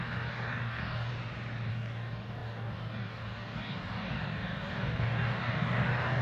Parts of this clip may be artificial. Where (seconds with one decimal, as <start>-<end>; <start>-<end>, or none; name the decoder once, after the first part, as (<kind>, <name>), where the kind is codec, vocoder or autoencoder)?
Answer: 0.0-1.1 (codec, DAC); 1.7-6.2